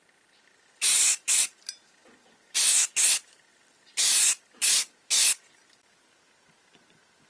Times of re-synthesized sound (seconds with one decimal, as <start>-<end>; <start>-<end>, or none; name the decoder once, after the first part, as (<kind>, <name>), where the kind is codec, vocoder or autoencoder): none